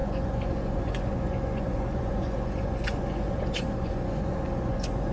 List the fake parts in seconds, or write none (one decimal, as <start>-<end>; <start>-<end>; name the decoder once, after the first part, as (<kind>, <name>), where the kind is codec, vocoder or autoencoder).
0.0-5.1 (vocoder, Vocos)